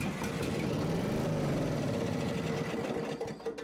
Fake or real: real